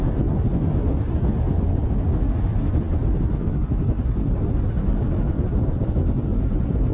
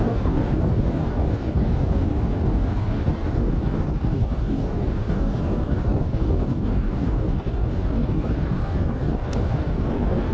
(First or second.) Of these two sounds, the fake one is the second